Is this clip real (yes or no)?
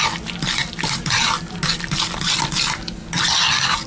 yes